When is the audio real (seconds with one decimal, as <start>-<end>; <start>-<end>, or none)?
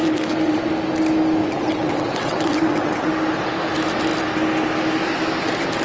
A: 0.7-1.4; 3.1-5.8